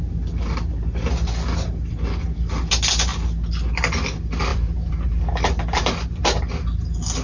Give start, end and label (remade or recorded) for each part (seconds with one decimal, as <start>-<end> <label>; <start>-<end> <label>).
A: 0.0-4.5 recorded; 4.5-6.2 remade; 6.2-7.2 recorded